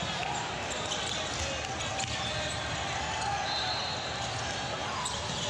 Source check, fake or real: real